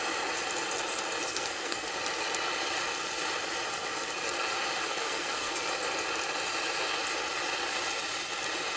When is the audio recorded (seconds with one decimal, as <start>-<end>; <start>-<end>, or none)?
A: 0.0-1.3; 1.9-4.9; 5.5-8.8